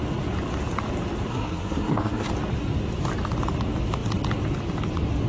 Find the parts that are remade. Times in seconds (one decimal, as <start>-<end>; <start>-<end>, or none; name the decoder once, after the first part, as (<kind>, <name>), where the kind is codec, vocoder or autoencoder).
1.3-2.3 (codec, SNAC)